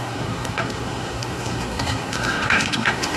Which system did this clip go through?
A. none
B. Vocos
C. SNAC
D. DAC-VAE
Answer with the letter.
C